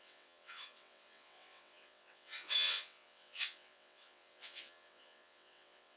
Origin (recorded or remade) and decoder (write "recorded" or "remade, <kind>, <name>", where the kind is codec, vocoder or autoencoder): remade, vocoder, WaveNeXt